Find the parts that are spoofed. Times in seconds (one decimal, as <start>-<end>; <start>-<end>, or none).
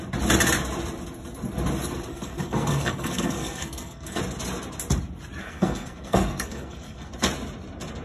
2.1-4.2; 5.4-7.1